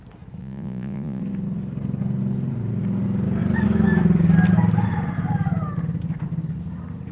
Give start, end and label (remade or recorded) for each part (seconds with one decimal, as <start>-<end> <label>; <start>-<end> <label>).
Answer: 0.0-0.4 recorded; 0.4-1.2 remade; 1.2-7.1 recorded